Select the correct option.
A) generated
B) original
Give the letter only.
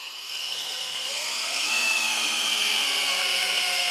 A